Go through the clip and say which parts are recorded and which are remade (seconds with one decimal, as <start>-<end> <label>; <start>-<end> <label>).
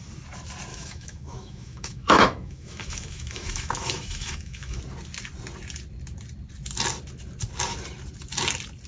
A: 0.0-0.7 recorded; 0.7-4.8 remade; 4.8-8.9 recorded